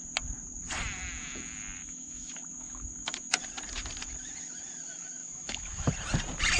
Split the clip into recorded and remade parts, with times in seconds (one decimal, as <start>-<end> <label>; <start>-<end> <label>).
0.0-1.8 recorded; 1.8-3.3 remade; 3.3-5.2 recorded; 5.2-5.9 remade; 5.9-6.6 recorded